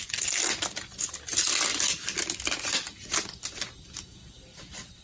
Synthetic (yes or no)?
no